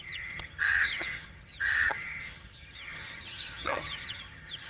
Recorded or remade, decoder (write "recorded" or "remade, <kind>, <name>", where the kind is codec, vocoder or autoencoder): remade, vocoder, HiFi-GAN